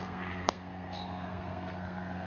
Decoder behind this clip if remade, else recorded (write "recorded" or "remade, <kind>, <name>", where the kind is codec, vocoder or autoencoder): remade, codec, SNAC